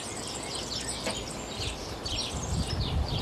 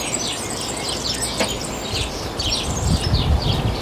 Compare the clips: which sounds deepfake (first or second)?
first